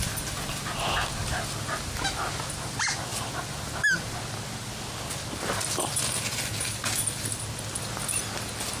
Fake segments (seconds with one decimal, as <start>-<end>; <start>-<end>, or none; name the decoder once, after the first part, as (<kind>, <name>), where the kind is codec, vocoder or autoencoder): none